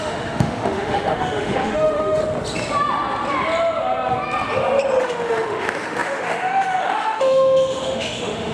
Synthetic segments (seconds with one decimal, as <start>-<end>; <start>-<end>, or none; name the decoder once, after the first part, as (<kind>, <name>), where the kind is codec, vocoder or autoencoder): 0.0-2.2 (autoencoder, DAC-VAE); 5.0-8.5